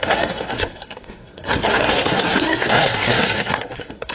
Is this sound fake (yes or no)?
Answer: yes